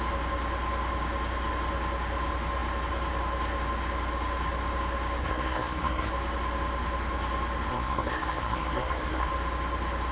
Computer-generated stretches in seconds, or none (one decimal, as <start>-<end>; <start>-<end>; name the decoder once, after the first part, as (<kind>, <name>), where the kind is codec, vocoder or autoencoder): 5.2-6.1 (codec, SNAC); 7.7-9.3